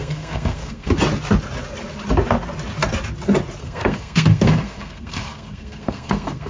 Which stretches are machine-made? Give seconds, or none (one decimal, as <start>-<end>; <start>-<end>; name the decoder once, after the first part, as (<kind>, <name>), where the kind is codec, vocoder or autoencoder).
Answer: 0.0-0.9 (codec, SNAC); 3.6-6.5